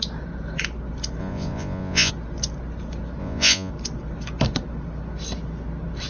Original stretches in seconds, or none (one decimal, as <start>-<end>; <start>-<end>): 0.0-1.2; 2.1-3.2; 3.7-6.1